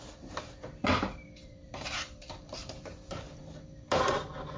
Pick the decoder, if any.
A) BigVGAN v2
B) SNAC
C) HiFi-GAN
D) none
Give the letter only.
A